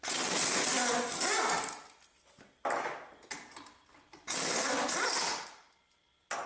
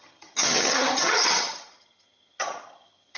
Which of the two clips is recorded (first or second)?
first